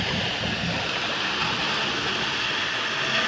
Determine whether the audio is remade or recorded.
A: recorded